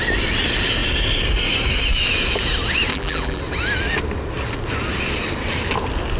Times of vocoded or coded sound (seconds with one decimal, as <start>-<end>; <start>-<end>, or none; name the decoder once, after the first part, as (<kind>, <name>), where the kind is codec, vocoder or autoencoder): 2.9-3.4 (vocoder, BigVGAN v2)